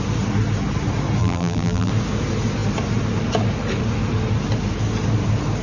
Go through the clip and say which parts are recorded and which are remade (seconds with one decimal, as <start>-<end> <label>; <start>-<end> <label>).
0.0-1.2 recorded; 1.2-1.9 remade; 1.9-5.6 recorded